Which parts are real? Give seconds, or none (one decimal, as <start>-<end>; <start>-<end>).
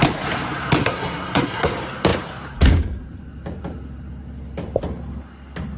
0.0-0.8; 1.7-5.8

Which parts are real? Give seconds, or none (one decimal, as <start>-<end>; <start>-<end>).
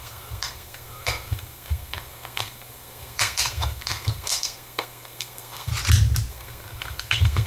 5.7-6.3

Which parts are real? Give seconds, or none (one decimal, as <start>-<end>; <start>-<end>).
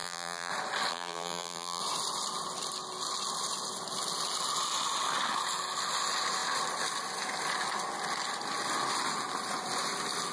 0.5-0.9; 1.8-10.3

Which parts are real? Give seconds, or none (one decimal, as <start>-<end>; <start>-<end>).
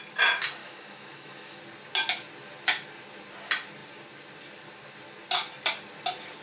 0.0-0.6; 1.6-6.4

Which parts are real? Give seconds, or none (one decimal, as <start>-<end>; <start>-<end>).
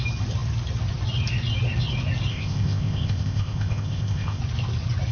0.0-2.3; 4.4-5.1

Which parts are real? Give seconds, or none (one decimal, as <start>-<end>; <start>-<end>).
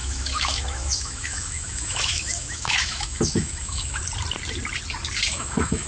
4.0-5.3